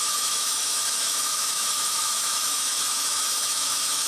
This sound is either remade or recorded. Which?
remade